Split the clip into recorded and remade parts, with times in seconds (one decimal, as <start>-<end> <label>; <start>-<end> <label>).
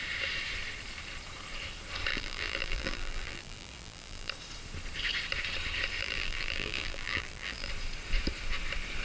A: 0.0-2.1 recorded; 2.1-4.3 remade; 4.3-6.0 recorded; 6.0-7.7 remade; 7.7-9.0 recorded